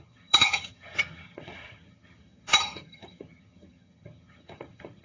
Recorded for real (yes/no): no